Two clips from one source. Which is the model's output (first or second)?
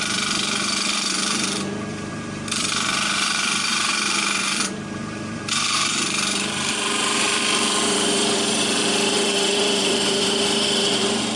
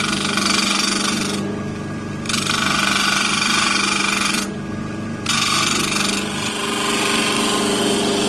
first